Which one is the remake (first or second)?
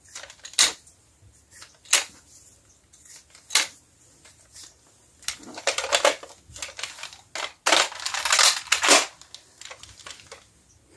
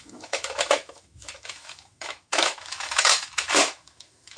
second